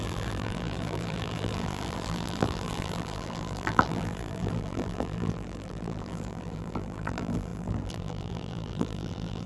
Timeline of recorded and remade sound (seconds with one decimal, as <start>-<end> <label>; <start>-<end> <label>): 0.0-9.5 remade